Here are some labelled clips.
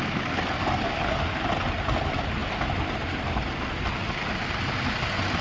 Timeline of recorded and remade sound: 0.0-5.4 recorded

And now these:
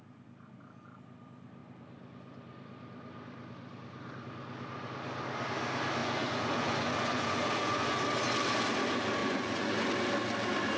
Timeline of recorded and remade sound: 0.0-6.0 recorded; 6.0-8.0 remade; 8.0-9.2 recorded; 9.2-9.9 remade; 9.9-10.8 recorded

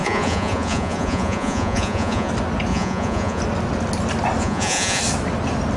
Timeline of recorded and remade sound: 0.0-2.3 remade; 2.3-2.7 recorded; 2.7-3.4 remade; 3.4-4.4 recorded; 4.4-5.0 remade; 5.0-5.8 recorded

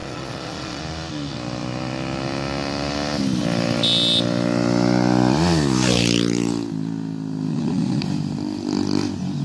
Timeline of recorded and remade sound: 0.0-0.8 remade; 0.8-7.5 recorded; 7.5-8.0 remade; 8.0-9.4 recorded